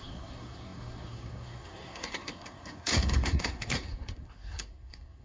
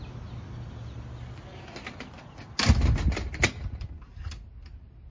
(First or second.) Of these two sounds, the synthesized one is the first